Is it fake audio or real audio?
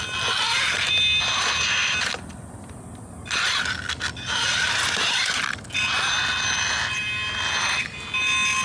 real